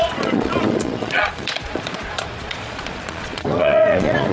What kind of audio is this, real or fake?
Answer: fake